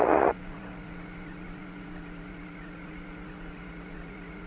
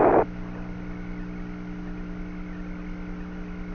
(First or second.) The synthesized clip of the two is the first